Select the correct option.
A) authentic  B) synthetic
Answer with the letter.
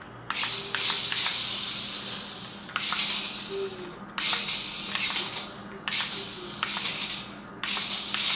A